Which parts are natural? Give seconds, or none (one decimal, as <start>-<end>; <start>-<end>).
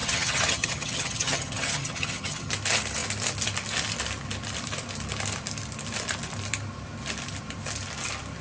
2.5-8.4